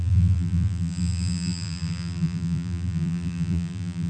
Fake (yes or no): yes